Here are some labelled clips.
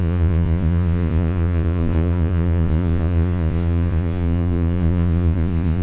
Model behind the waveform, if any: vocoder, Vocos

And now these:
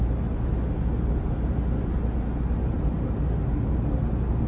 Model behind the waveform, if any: none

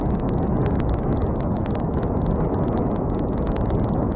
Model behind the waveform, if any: autoencoder, DAC-VAE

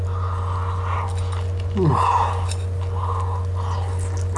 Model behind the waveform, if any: none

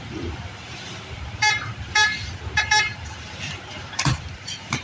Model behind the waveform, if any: vocoder, BigVGAN v2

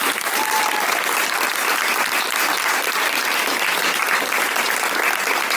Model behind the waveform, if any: none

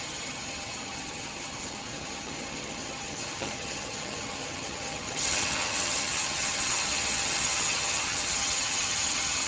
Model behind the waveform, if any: vocoder, HiFi-GAN